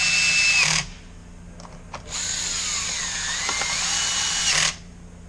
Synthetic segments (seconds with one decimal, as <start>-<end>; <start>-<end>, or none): none